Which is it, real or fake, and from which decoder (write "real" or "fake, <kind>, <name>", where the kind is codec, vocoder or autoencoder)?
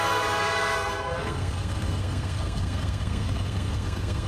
fake, codec, SNAC